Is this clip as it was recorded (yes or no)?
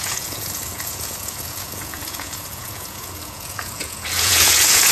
no